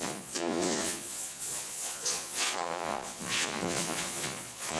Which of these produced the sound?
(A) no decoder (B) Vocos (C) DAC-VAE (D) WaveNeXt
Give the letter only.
B